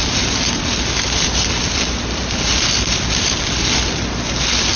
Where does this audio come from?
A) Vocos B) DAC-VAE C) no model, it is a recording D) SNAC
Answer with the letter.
C